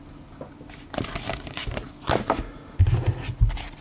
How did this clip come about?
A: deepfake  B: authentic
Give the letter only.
B